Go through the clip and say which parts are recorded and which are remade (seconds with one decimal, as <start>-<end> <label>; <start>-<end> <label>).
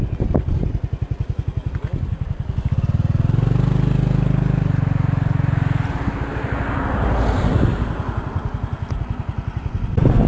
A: 0.0-10.3 recorded